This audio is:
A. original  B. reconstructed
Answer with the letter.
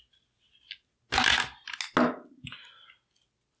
A